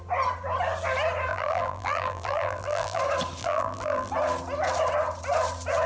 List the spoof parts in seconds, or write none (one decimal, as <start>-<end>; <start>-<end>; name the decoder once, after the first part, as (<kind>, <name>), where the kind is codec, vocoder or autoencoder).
1.3-3.0 (vocoder, BigVGAN v2); 3.4-4.1